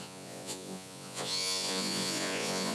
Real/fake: fake